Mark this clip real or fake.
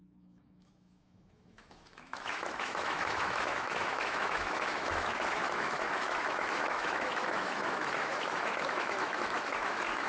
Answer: fake